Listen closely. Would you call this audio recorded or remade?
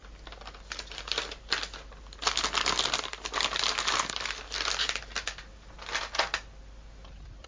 recorded